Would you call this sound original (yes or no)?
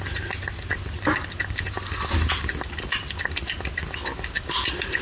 yes